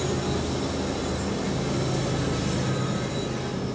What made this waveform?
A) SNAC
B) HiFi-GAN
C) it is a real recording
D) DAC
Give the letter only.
C